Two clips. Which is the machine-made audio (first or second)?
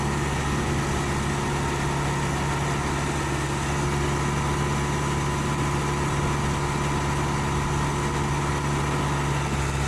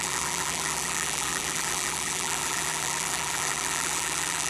second